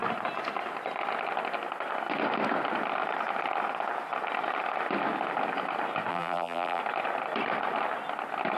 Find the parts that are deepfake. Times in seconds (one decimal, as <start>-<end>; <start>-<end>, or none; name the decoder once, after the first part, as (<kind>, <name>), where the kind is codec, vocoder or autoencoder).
6.1-6.8 (vocoder, BigVGAN v2)